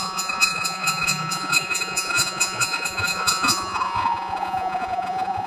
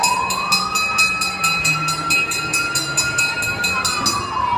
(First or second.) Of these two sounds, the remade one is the first